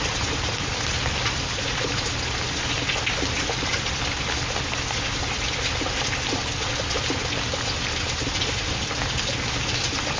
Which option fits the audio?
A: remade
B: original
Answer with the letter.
B